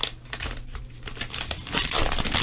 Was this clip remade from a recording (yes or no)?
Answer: no